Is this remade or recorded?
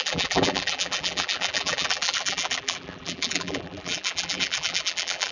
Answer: remade